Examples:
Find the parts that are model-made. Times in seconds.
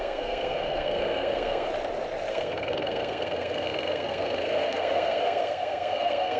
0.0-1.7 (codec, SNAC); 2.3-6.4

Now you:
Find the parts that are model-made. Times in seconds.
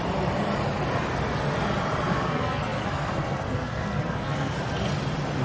2.1-4.5 (codec, SNAC)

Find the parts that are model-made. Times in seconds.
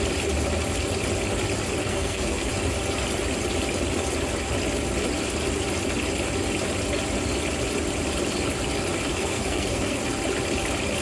1.8-2.5 (codec, SNAC); 9.1-10.0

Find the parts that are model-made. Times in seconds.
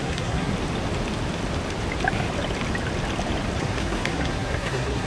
0.0-0.5 (codec, SNAC); 3.6-5.1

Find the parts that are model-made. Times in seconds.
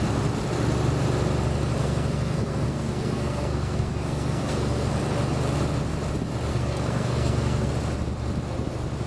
1.8-4.9 (codec, SNAC); 6.5-7.7